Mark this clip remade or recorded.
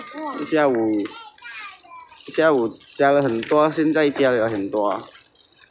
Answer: recorded